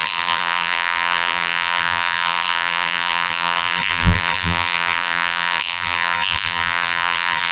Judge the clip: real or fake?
fake